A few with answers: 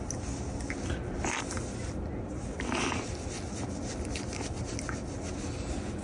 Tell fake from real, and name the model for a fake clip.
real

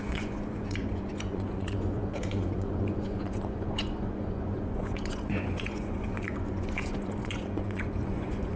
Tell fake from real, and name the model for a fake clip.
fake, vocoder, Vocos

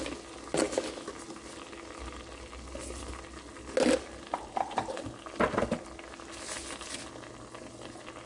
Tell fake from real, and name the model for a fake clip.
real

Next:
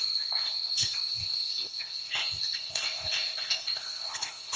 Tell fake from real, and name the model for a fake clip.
fake, codec, ZipCodec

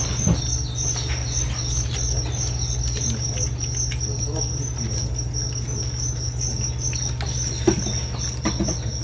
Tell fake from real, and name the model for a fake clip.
real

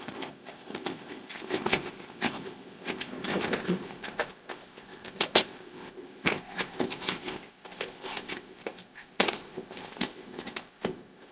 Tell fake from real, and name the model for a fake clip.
fake, codec, ZipCodec